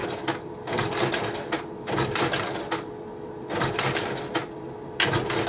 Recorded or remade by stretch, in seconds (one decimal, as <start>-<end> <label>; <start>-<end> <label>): 0.0-5.5 recorded